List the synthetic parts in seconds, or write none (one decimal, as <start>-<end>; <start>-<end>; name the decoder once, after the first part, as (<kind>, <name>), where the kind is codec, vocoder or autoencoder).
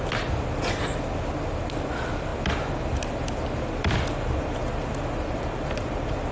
none